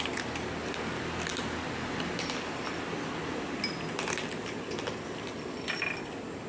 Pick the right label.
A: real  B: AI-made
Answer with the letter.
A